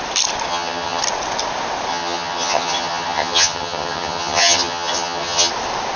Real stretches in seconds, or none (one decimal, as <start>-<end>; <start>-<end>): 0.0-0.5; 1.0-1.9; 5.5-6.0